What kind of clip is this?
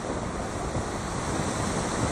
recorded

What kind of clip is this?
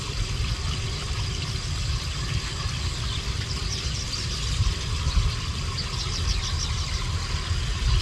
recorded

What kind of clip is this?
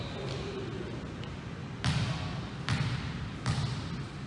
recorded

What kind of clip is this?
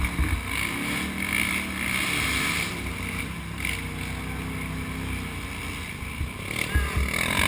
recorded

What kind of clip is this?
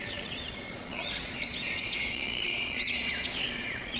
remade